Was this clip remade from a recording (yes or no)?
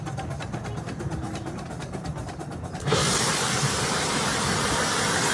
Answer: no